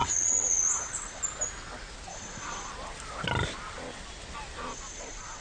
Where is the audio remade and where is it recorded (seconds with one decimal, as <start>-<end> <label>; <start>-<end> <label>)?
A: 0.0-1.2 remade; 1.2-2.1 recorded; 2.1-2.7 remade; 2.7-4.7 recorded; 4.7-5.4 remade